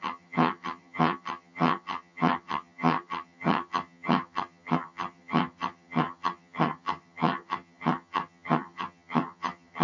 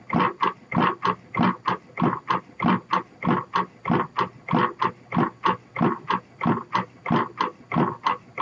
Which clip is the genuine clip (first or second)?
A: second